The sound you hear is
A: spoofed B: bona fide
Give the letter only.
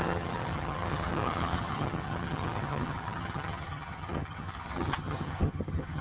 A